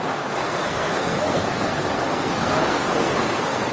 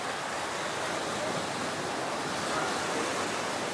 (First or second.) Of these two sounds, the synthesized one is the first